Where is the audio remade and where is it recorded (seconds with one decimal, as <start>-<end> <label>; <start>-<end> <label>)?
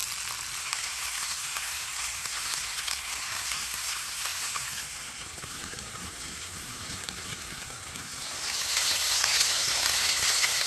0.0-0.6 recorded; 0.6-10.7 remade